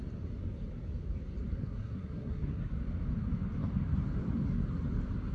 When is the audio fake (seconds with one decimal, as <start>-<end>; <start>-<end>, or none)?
1.6-2.7